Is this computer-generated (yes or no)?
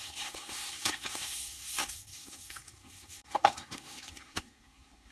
yes